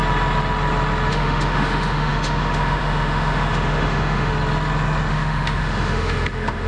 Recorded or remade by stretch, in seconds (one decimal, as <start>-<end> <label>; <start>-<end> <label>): 0.0-1.1 recorded; 1.1-4.3 remade; 4.3-5.1 recorded; 5.1-6.7 remade